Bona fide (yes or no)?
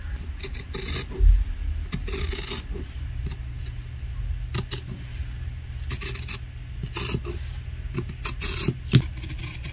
yes